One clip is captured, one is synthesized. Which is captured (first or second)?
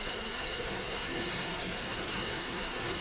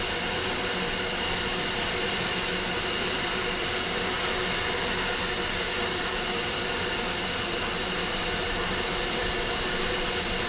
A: second